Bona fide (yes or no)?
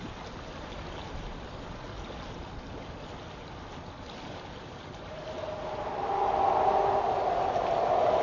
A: yes